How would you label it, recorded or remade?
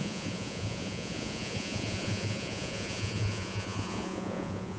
remade